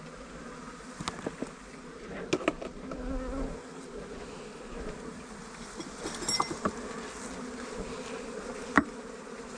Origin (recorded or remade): recorded